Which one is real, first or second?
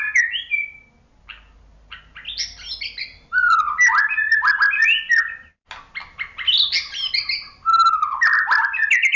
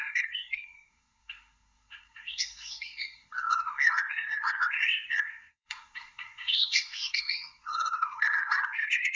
first